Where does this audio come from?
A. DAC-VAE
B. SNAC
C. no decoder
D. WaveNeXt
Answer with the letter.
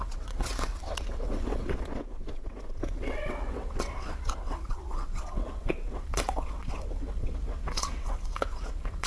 D